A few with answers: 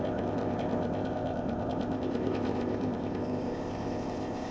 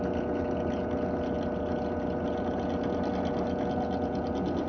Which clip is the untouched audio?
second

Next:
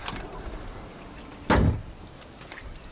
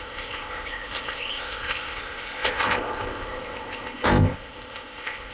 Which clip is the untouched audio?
first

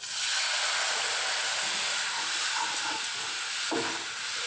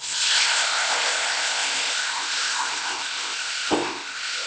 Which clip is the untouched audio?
first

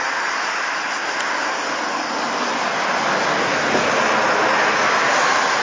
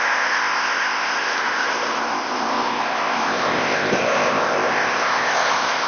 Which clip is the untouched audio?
first